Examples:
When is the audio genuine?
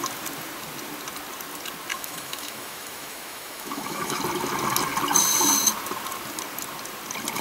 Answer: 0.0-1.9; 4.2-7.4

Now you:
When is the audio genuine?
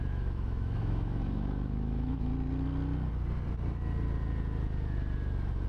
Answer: 2.3-5.7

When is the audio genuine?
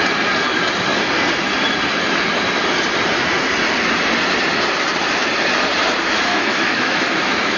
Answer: 0.0-6.3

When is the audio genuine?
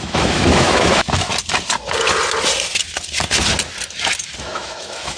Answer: 1.3-4.4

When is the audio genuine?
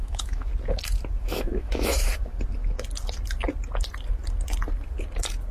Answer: 0.5-1.2; 2.1-5.5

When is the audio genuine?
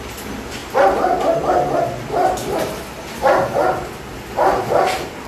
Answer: 0.0-5.3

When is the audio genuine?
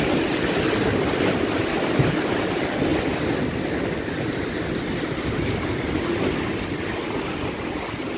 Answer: 0.0-8.2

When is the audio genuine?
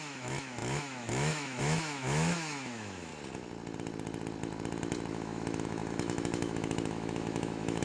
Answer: 3.1-5.1